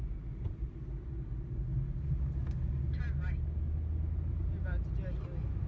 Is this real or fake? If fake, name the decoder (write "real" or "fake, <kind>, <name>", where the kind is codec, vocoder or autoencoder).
real